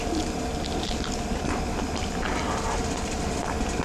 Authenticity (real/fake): real